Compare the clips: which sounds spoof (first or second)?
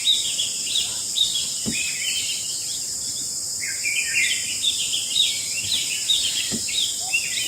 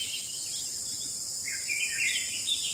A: second